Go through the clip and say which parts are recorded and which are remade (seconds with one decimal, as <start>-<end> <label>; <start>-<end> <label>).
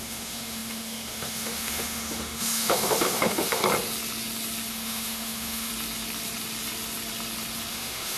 0.0-3.6 remade; 3.6-4.7 recorded; 4.7-5.7 remade; 5.7-7.7 recorded; 7.7-8.2 remade